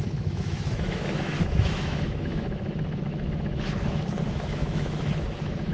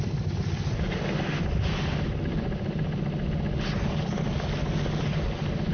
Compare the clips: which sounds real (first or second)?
second